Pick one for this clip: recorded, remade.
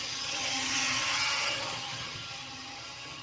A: remade